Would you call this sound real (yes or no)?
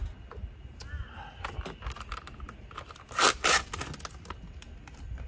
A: yes